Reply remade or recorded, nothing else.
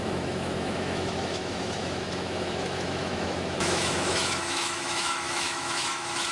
remade